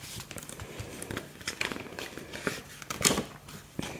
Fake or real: fake